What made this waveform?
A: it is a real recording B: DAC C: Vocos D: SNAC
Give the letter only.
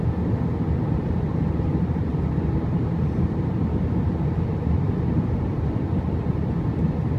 A